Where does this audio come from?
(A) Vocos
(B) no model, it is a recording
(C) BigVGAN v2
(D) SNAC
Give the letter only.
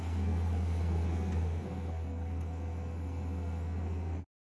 D